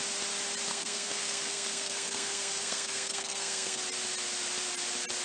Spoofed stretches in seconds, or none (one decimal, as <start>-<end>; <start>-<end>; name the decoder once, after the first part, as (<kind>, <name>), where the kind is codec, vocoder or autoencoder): 0.7-3.8 (codec, SNAC)